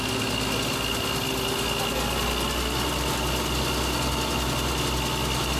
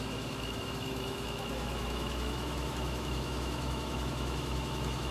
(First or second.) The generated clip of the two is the second